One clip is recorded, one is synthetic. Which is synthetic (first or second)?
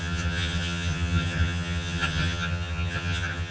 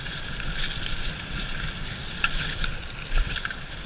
first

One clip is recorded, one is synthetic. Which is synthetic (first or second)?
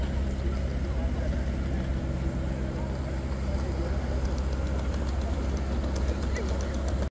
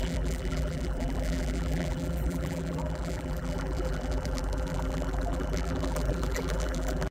second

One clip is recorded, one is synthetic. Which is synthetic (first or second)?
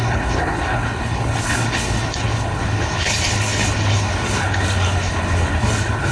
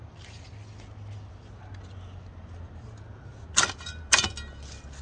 first